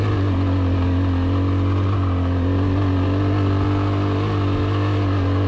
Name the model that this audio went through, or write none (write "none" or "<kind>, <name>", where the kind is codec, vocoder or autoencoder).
none